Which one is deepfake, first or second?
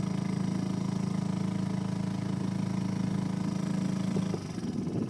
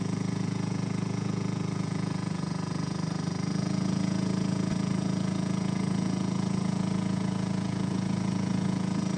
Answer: second